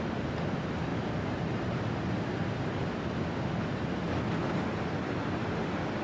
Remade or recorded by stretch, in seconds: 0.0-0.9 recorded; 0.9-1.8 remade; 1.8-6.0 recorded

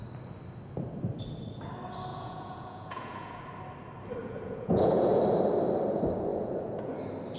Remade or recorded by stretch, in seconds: 0.0-2.1 recorded; 2.1-3.4 remade; 3.4-4.2 recorded; 4.2-5.2 remade; 5.2-6.3 recorded; 6.3-6.9 remade; 6.9-7.4 recorded

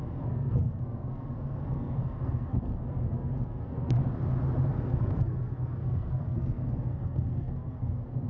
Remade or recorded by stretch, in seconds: 0.0-4.0 remade; 4.0-4.7 recorded; 4.7-8.3 remade

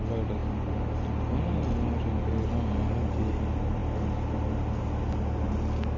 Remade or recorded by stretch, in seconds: 0.0-6.0 recorded

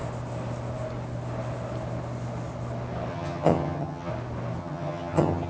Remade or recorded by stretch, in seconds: 0.0-3.1 recorded; 3.1-4.1 remade; 4.1-4.6 recorded; 4.6-5.5 remade

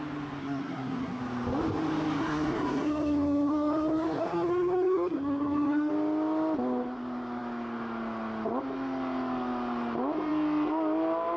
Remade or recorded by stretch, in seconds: 0.0-0.4 recorded; 0.4-1.2 remade; 1.2-2.2 recorded; 2.2-5.9 remade; 5.9-11.4 recorded